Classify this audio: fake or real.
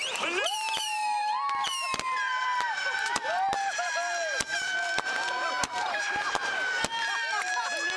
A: fake